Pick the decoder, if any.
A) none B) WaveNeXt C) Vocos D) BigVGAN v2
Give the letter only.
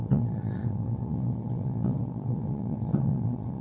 B